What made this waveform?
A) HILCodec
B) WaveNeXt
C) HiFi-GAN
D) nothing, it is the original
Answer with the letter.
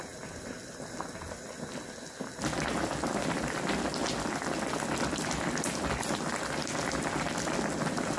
D